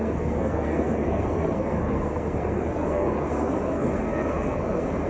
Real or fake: fake